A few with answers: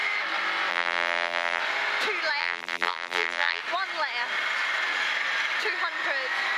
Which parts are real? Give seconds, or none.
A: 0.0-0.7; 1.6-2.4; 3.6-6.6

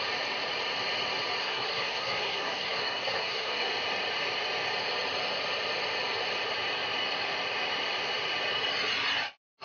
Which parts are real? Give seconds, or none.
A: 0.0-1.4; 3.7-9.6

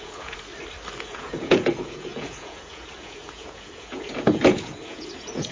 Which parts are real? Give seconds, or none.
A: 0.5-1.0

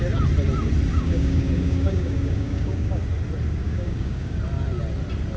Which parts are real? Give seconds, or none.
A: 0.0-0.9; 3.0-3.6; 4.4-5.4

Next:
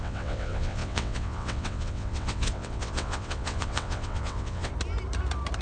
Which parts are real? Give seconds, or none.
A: 4.7-5.6